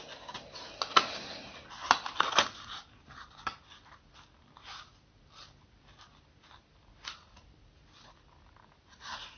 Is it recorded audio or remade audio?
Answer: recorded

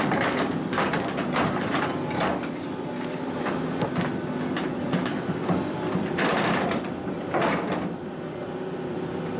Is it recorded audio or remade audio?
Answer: remade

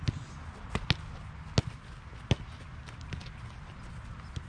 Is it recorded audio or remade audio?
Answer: recorded